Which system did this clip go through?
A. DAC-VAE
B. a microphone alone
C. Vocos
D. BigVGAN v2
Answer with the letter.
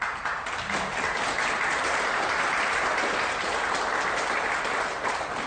B